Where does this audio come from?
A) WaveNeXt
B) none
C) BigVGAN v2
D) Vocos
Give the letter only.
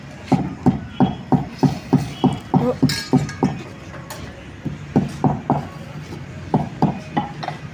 B